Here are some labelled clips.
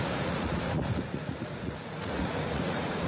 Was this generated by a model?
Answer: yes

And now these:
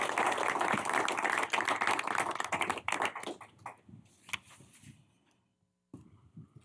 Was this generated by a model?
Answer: no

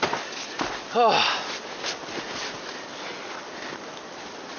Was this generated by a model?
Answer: no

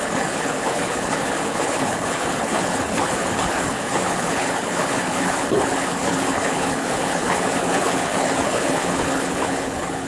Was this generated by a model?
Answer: yes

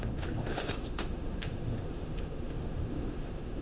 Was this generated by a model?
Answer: yes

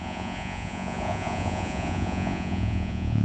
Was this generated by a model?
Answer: yes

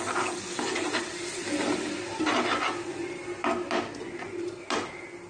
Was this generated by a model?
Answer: no